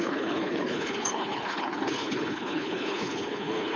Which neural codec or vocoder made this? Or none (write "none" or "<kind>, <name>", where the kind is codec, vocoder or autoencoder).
codec, HILCodec